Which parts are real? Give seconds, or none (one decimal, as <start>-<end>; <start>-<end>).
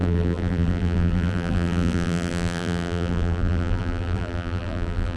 none